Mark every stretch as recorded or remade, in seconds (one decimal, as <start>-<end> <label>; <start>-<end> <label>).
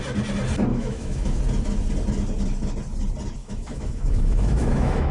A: 0.0-0.7 recorded; 0.7-1.4 remade; 1.4-3.4 recorded; 3.4-5.1 remade